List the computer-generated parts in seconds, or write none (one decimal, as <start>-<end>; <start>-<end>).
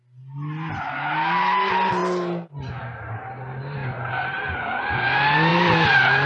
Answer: 3.8-4.9; 5.5-6.3